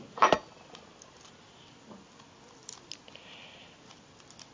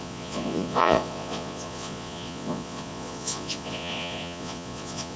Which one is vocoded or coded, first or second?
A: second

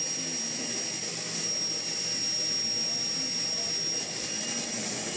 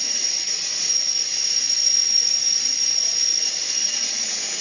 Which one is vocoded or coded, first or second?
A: second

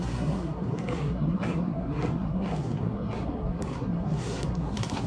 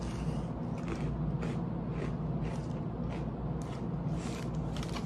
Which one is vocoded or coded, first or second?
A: first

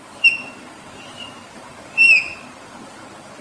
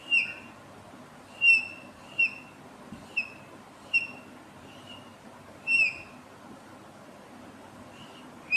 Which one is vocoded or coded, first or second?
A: first